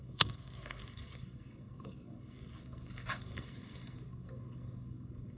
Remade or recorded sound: remade